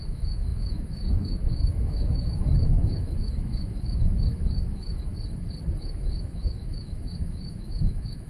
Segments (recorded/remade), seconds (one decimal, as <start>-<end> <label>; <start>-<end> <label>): 0.0-5.1 remade; 5.1-5.8 recorded; 5.8-8.3 remade